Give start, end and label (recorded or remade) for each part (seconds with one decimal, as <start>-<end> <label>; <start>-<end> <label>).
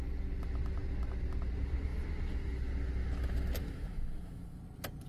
0.0-3.6 recorded; 3.6-4.6 remade; 4.6-5.1 recorded